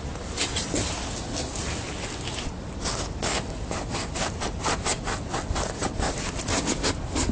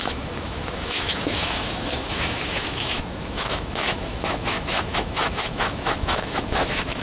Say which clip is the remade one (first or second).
second